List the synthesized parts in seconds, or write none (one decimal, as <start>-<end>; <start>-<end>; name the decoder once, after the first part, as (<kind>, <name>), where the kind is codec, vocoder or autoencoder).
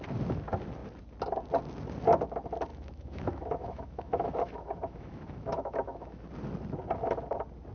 2.7-6.3 (autoencoder, DAC-VAE)